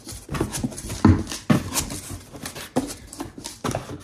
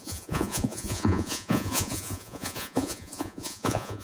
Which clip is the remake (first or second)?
second